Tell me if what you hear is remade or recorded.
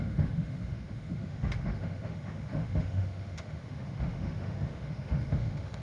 remade